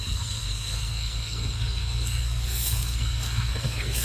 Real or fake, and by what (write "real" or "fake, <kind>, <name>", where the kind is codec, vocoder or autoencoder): fake, codec, SNAC